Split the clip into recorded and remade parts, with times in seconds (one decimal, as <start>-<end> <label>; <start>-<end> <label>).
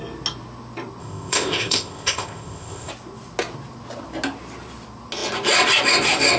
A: 0.0-1.0 recorded; 1.0-2.9 remade; 2.9-6.4 recorded